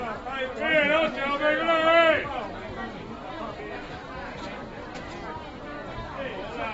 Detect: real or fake real